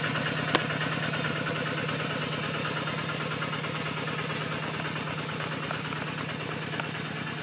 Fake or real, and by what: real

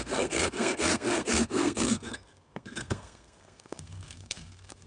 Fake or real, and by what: fake, codec, SNAC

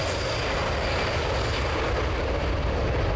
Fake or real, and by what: real